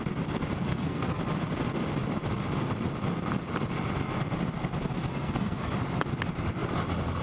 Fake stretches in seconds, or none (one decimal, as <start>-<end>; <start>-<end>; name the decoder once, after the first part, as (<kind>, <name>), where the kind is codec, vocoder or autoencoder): 0.7-1.2 (codec, SNAC); 5.1-5.7